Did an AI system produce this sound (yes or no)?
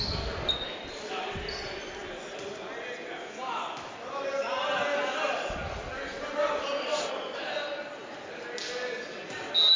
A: no